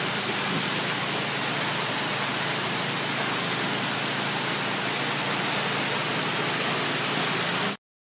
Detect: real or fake real